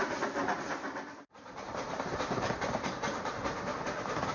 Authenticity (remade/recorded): remade